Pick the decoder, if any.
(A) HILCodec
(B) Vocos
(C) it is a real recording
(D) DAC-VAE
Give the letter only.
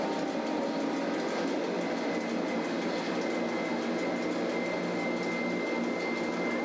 C